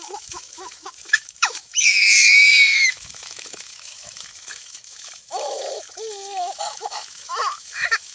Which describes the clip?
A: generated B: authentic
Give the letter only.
A